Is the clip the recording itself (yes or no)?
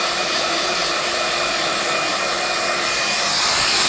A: yes